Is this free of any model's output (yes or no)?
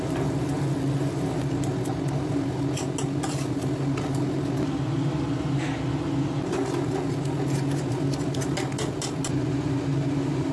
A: yes